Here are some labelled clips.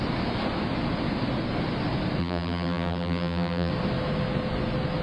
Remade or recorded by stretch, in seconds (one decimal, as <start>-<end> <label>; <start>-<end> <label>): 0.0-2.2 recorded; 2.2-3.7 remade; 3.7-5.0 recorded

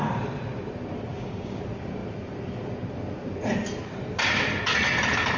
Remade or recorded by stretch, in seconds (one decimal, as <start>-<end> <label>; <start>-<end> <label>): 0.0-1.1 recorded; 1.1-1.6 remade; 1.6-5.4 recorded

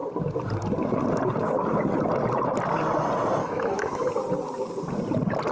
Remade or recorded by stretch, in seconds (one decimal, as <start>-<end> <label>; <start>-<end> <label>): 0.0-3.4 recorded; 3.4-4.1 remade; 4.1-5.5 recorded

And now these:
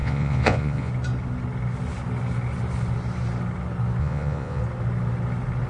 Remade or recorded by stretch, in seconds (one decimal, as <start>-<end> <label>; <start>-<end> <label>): 0.0-0.9 remade; 0.9-4.0 recorded; 4.0-4.6 remade; 4.6-5.7 recorded